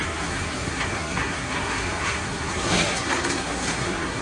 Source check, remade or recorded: remade